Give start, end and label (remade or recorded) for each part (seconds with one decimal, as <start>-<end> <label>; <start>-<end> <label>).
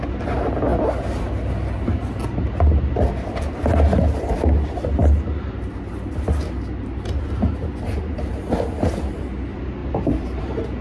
0.0-9.8 recorded; 9.8-10.4 remade; 10.4-10.8 recorded